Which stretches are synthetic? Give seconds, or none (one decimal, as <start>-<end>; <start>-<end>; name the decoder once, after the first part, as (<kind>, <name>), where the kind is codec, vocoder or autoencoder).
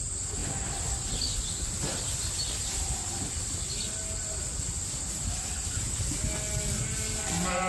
none